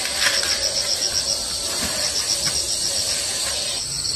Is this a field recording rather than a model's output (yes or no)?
yes